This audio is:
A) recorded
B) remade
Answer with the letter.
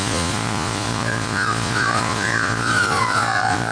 B